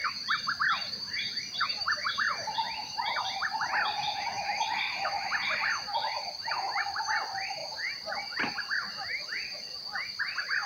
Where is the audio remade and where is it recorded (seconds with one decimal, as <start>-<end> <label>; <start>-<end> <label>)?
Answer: 0.0-1.0 recorded; 1.0-7.6 remade; 7.6-10.2 recorded; 10.2-10.7 remade